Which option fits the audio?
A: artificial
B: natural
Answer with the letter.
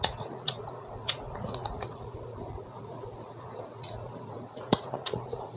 A